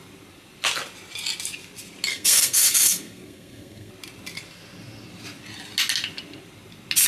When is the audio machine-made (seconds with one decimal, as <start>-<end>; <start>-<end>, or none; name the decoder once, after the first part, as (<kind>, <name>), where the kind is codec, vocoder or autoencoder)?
2.1-3.9 (codec, SNAC)